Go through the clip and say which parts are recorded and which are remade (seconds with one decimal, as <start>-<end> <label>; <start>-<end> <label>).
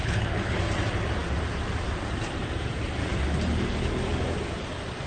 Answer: 0.0-0.6 remade; 0.6-5.1 recorded